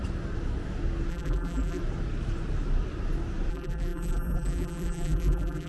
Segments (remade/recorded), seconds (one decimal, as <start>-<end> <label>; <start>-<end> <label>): 0.0-1.1 recorded; 1.1-1.8 remade; 1.8-3.5 recorded; 3.5-5.7 remade